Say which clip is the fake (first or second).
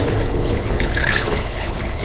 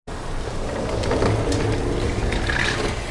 first